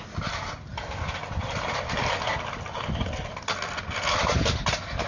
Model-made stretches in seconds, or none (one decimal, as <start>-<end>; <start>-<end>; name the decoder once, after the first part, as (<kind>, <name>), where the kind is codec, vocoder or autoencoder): none